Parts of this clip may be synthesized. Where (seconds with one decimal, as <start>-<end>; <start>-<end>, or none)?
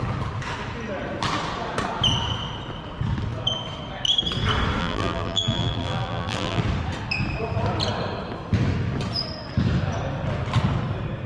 4.8-6.6